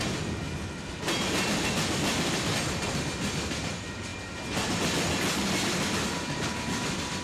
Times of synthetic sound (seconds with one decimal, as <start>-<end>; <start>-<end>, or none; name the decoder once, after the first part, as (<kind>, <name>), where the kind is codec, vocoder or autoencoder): none